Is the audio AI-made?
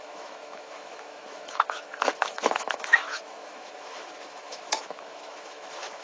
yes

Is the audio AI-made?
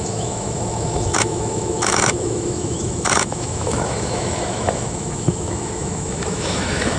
yes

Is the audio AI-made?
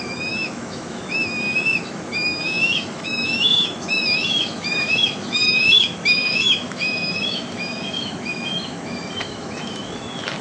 yes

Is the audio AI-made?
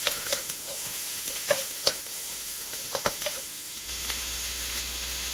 yes